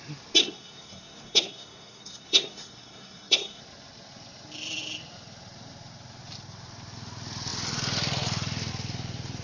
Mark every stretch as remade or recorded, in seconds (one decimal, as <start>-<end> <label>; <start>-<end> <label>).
0.0-0.4 recorded; 0.4-3.6 remade; 3.6-9.4 recorded